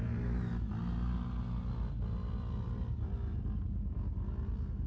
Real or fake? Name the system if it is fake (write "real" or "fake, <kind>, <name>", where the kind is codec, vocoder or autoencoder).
real